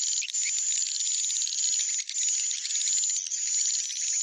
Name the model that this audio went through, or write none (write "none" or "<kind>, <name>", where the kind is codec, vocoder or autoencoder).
none